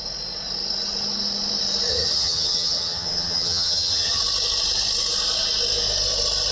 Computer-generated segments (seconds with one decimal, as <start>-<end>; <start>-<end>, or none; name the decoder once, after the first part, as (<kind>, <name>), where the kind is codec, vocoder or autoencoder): 1.9-4.2 (vocoder, HiFi-GAN)